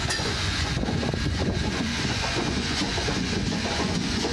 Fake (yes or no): yes